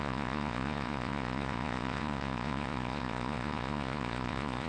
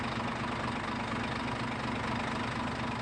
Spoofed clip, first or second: first